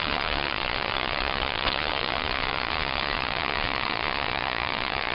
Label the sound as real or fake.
fake